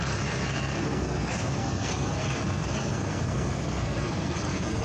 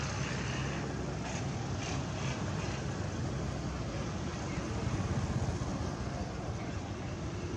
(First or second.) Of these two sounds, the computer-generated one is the first